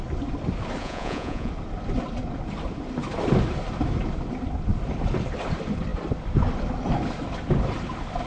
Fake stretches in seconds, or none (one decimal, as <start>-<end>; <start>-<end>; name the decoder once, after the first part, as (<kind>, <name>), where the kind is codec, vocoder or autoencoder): 0.8-1.5 (vocoder, Vocos)